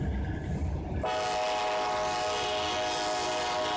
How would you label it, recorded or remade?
recorded